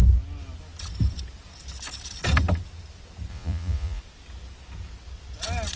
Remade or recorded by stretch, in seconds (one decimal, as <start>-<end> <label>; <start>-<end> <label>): 0.0-3.3 recorded; 3.3-4.0 remade; 4.0-5.8 recorded